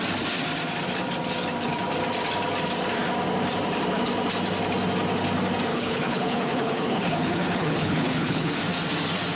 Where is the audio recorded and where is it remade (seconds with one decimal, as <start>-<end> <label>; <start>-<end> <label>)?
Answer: 0.0-5.7 recorded; 5.7-8.6 remade; 8.6-9.4 recorded

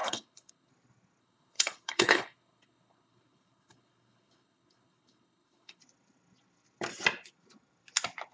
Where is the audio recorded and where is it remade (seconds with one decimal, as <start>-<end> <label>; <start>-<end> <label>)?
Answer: 0.0-0.7 remade; 0.7-1.2 recorded; 1.2-5.8 remade; 5.8-8.3 recorded

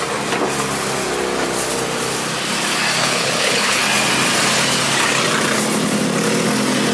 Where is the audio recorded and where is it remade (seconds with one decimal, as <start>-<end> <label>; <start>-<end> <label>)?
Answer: 0.0-3.0 recorded; 3.0-3.8 remade; 3.8-6.9 recorded

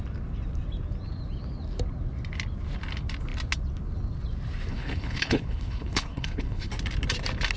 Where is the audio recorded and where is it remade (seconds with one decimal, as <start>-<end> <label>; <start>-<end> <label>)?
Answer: 0.0-4.7 recorded; 4.7-6.7 remade; 6.7-7.6 recorded

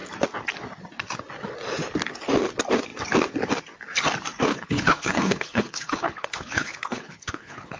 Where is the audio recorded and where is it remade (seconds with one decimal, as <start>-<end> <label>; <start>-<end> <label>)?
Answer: 0.0-4.5 recorded; 4.5-7.8 remade

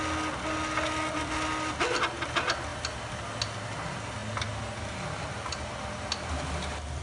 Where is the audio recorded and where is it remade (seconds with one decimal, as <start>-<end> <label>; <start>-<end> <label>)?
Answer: 0.0-7.0 recorded